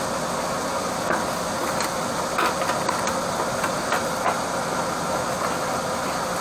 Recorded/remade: recorded